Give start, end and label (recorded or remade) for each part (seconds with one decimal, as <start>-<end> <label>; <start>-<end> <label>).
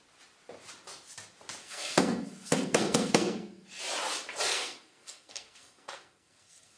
0.0-1.6 recorded; 1.6-3.8 remade; 3.8-4.5 recorded; 4.5-6.8 remade